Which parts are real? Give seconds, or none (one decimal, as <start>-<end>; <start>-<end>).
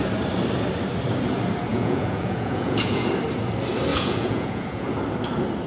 0.0-1.7; 3.1-3.9; 4.9-5.7